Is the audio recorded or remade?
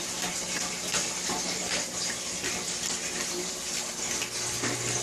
remade